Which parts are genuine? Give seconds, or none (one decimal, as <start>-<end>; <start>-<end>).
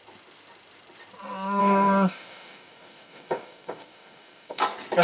0.0-1.6; 4.6-5.0